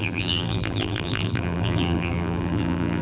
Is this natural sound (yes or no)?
no